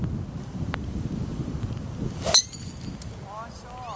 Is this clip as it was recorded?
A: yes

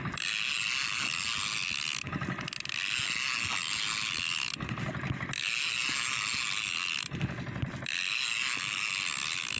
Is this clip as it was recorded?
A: yes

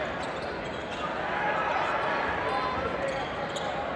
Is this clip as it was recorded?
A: yes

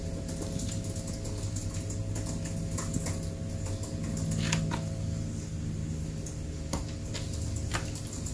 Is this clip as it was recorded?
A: yes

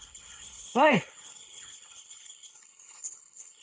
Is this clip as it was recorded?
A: no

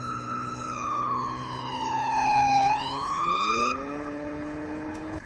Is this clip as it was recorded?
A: no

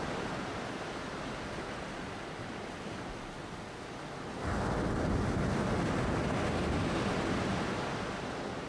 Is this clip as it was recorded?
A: yes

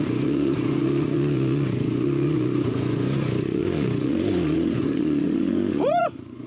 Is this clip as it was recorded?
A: no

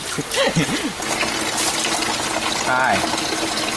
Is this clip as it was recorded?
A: yes